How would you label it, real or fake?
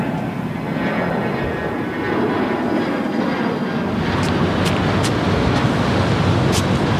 real